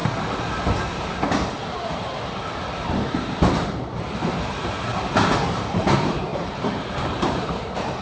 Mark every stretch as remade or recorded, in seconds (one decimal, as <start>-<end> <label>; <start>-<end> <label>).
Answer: 0.0-2.3 recorded; 2.3-8.0 remade